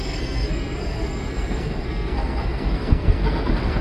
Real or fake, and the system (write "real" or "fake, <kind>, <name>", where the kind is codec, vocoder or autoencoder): fake, codec, SNAC